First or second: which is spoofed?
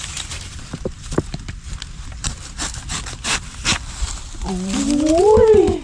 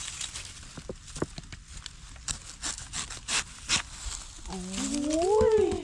first